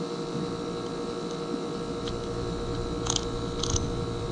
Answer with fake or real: real